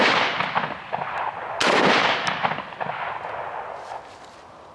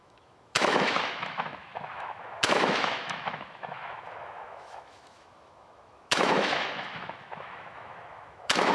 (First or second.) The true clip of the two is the first